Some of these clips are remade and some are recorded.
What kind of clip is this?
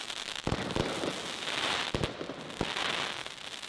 remade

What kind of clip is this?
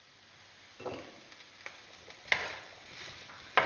recorded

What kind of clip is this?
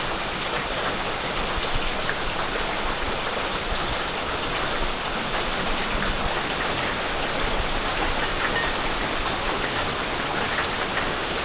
remade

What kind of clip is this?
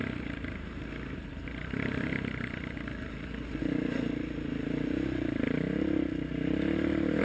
remade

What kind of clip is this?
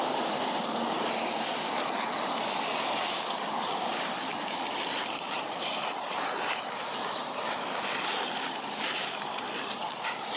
remade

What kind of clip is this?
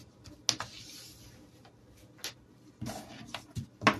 recorded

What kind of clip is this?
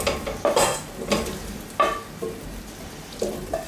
remade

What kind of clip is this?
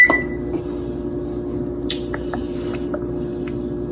recorded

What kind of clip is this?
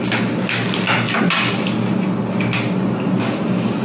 recorded